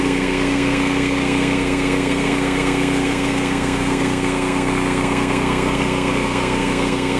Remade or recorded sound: remade